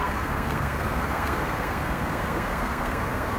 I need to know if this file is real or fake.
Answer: fake